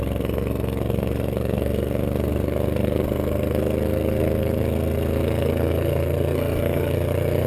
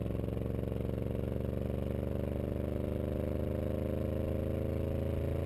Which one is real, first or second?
second